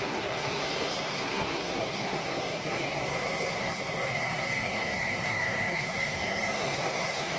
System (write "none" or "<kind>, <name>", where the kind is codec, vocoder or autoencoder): codec, SNAC